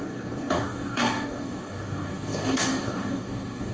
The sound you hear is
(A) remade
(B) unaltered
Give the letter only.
A